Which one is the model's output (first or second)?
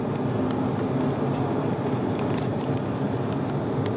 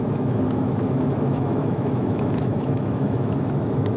second